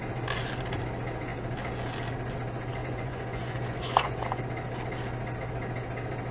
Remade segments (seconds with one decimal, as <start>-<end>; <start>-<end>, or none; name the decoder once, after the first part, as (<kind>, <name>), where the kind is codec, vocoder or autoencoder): 2.8-4.4 (vocoder, Vocos)